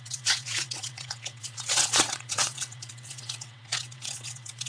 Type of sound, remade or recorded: remade